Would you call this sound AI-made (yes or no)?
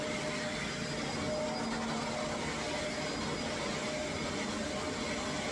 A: no